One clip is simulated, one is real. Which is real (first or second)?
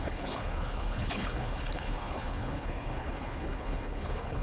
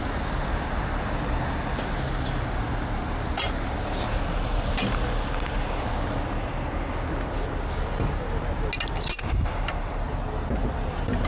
second